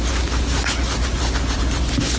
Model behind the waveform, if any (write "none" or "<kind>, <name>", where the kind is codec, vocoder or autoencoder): none